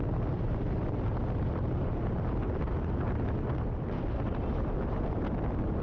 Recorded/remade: recorded